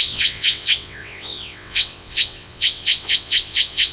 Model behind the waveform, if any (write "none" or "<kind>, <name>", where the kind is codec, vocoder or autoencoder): vocoder, WaveNeXt